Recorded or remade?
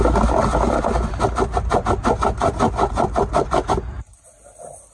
recorded